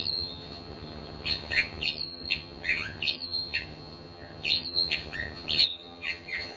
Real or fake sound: fake